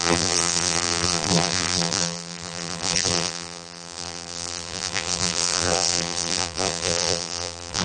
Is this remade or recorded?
remade